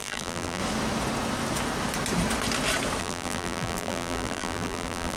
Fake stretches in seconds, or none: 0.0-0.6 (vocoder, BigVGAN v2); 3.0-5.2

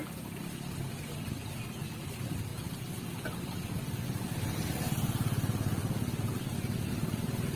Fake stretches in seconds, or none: none